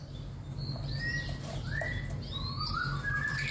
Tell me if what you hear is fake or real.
real